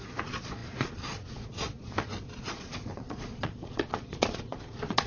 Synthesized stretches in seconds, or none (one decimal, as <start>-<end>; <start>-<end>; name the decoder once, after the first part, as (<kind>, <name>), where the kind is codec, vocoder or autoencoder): 0.0-5.1 (vocoder, Vocos)